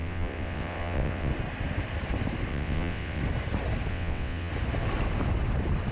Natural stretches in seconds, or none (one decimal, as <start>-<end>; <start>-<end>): 1.3-2.5; 3.2-3.9; 4.5-5.9

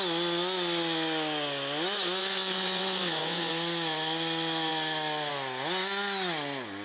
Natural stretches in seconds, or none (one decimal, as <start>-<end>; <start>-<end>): 0.0-2.2; 3.5-6.8